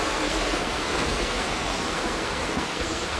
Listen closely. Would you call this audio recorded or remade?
remade